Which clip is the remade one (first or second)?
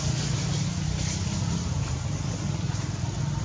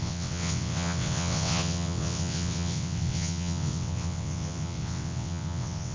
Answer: second